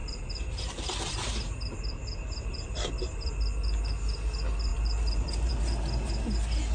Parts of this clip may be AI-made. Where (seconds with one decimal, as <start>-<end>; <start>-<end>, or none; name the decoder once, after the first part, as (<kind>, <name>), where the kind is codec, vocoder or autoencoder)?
0.0-3.3 (vocoder, BigVGAN v2); 4.7-5.5